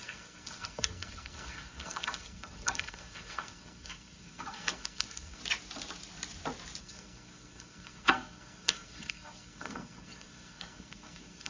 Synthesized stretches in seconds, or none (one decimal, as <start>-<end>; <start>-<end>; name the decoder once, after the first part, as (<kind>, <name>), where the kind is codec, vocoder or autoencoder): 0.0-5.4 (codec, SNAC); 6.8-11.5